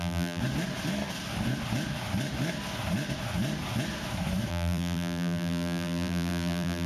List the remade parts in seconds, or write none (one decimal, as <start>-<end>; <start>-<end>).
0.0-0.4; 4.5-6.9